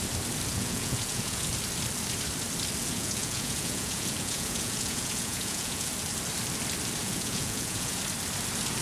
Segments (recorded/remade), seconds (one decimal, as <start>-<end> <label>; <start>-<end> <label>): 0.0-0.5 recorded; 0.5-1.5 remade; 1.5-2.8 recorded; 2.8-5.9 remade; 5.9-7.0 recorded; 7.0-8.0 remade; 8.0-8.8 recorded